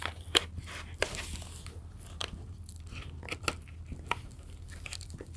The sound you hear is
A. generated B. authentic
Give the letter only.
B